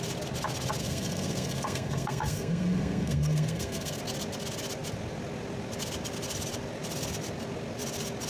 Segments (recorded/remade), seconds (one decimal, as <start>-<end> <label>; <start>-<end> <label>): 0.0-0.8 recorded; 0.8-4.0 remade; 4.0-8.3 recorded